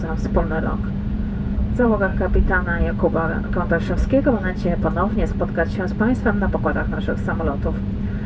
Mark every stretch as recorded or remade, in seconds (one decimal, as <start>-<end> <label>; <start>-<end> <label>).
0.0-2.1 remade; 2.1-6.4 recorded; 6.4-8.3 remade